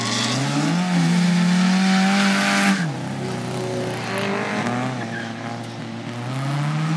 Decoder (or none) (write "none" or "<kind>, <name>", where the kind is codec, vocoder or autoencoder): none